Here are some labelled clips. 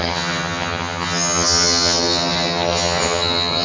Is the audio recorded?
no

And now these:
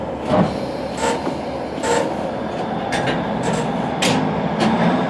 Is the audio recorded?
yes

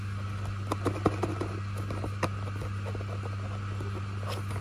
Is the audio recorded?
yes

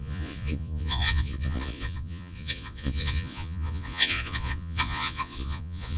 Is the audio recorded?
no